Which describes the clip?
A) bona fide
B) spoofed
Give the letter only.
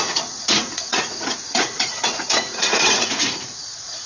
B